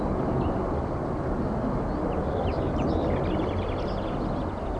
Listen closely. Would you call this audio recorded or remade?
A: recorded